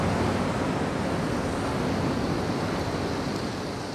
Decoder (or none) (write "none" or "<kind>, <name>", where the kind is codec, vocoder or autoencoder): none